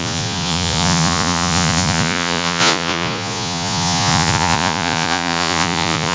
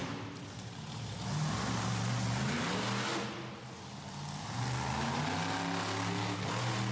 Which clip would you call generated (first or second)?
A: first